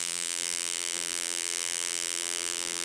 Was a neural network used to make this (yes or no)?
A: yes